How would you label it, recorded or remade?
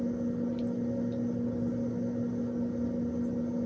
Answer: recorded